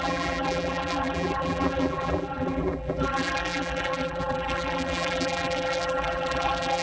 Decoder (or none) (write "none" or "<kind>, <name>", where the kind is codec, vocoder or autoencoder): vocoder, BigVGAN v2